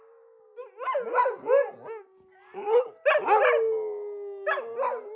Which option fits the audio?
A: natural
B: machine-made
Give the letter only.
A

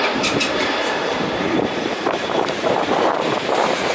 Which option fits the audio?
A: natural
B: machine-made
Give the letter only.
B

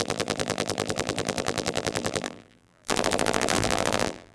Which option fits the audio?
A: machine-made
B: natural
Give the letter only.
A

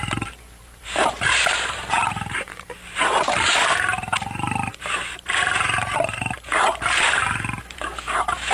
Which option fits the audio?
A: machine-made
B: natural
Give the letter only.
A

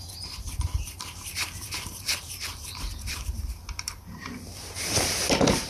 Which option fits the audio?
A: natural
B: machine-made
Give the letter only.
B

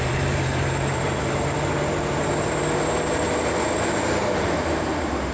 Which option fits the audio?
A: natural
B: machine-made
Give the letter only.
B